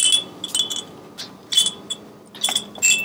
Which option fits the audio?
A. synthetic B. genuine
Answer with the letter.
B